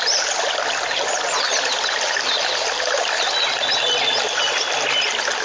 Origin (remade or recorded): recorded